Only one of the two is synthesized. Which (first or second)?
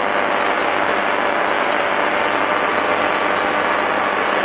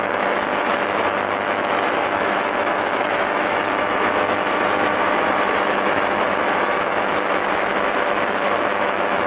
second